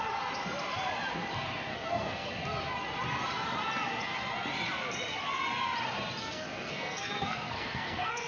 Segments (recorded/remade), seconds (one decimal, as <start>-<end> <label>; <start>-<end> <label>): 0.0-1.7 recorded; 1.7-2.3 remade; 2.3-6.2 recorded; 6.2-8.3 remade